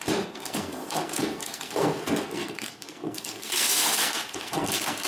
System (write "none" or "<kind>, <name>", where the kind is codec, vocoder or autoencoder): codec, SNAC